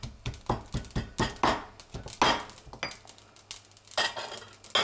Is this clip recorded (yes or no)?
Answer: yes